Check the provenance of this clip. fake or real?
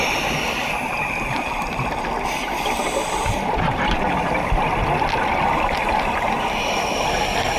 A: real